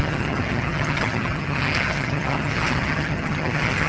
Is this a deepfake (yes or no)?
yes